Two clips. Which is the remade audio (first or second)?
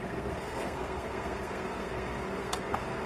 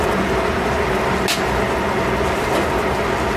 first